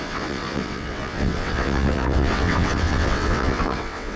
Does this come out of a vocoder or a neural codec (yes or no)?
yes